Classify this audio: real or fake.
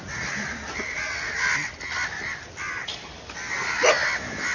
real